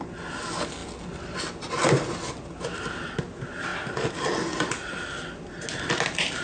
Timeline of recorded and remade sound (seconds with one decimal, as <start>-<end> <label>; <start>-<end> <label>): 0.0-6.4 recorded